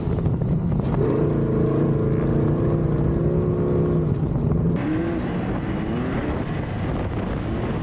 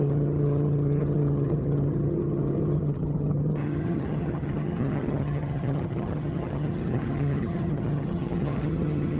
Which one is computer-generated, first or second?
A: second